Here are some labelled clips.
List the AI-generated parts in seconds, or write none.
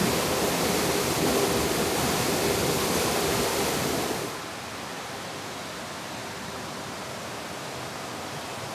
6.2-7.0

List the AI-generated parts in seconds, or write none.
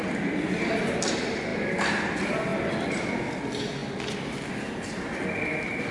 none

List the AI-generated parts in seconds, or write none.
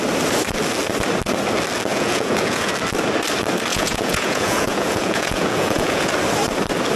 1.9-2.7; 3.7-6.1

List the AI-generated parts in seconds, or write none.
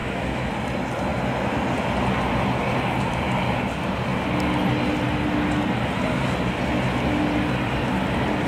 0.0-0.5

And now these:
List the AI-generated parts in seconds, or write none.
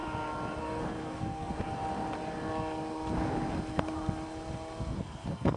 0.6-1.5; 4.9-5.6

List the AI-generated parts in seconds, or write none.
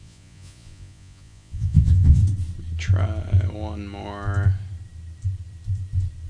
0.0-2.2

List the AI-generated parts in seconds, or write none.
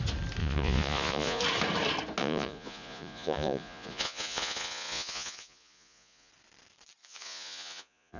0.4-1.4; 2.2-6.3; 7.0-8.2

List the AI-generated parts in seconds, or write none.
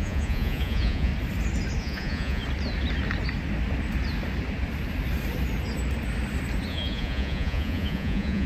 0.0-1.1; 1.8-2.4; 6.7-8.5